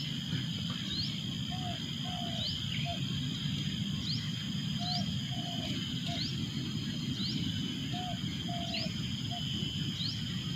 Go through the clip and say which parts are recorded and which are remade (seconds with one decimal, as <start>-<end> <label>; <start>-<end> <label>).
0.0-10.6 recorded